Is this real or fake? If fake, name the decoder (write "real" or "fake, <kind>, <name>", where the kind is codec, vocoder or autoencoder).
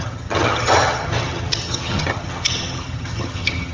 fake, vocoder, HiFi-GAN